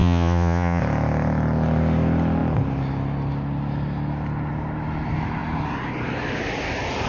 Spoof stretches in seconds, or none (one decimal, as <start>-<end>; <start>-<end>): 0.0-0.8